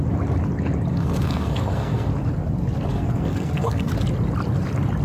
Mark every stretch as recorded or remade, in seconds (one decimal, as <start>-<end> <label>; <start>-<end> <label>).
0.0-0.9 recorded; 0.9-2.1 remade; 2.1-2.9 recorded; 2.9-3.9 remade; 3.9-5.0 recorded